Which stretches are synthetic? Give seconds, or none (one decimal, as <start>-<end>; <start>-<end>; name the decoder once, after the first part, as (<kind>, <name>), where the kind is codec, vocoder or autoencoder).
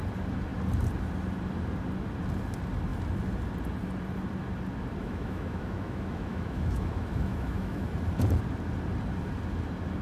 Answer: 5.0-7.9 (autoencoder, DAC-VAE)